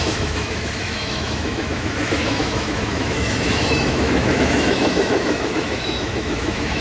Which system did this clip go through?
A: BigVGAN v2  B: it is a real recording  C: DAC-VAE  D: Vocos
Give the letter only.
C